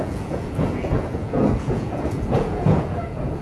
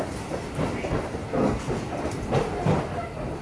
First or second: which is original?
second